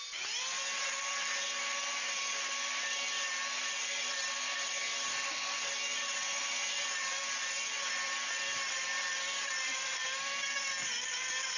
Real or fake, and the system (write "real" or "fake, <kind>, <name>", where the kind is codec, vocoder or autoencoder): real